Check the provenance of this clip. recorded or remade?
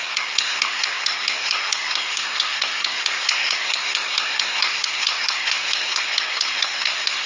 remade